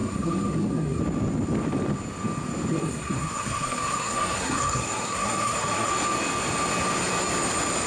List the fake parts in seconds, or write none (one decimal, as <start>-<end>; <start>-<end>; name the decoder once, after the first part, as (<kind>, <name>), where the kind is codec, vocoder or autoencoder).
0.0-1.0 (codec, SNAC); 2.7-5.9